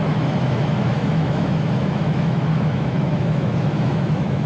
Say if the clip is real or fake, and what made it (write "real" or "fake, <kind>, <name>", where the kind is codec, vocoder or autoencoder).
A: fake, autoencoder, DAC-VAE